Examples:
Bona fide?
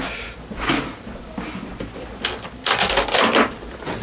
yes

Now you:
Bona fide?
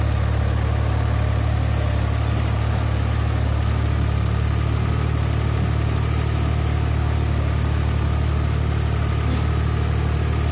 yes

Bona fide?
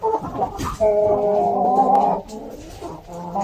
yes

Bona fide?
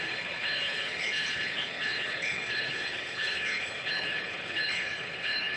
no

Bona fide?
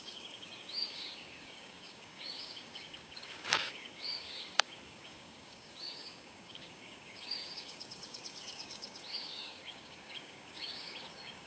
no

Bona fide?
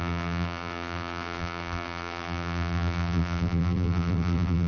no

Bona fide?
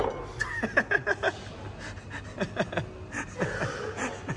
yes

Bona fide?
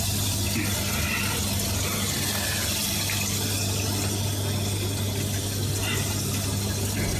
yes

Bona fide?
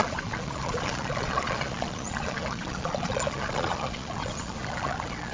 no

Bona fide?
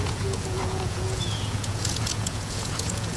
no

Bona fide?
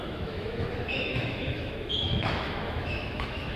no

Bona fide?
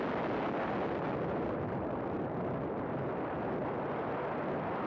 yes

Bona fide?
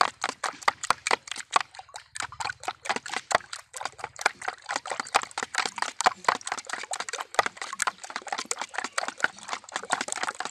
yes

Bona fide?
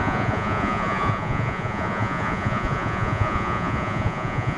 no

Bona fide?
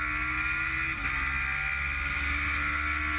yes